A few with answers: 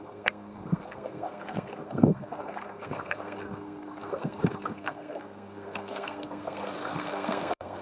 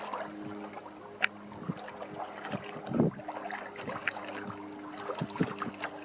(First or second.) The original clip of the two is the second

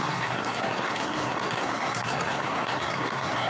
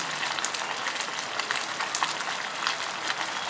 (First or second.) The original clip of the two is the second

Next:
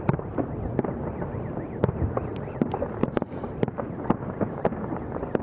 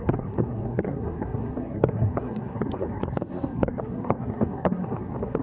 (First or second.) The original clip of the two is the first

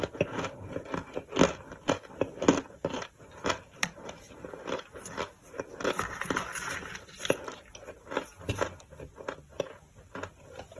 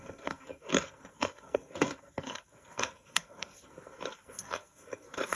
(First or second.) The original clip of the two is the first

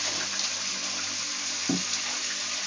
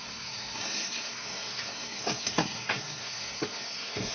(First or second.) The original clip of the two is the first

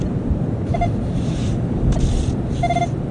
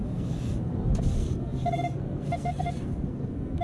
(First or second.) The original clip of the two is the first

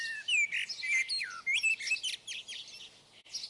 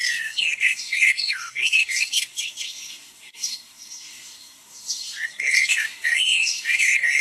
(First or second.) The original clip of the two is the first